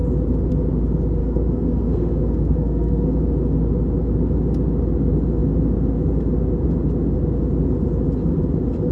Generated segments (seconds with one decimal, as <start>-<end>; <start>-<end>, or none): 1.2-3.2